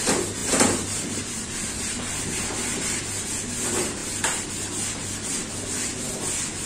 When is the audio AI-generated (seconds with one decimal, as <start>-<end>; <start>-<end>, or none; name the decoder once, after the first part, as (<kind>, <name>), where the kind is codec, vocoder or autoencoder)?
0.4-3.0 (vocoder, BigVGAN v2)